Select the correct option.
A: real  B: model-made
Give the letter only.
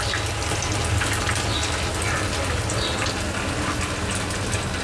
A